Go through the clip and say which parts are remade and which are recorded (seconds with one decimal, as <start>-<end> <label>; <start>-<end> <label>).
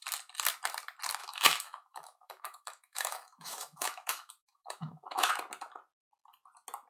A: 0.0-1.2 recorded; 1.2-5.3 remade; 5.3-6.9 recorded